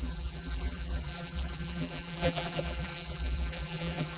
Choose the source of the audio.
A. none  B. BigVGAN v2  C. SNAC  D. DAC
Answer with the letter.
B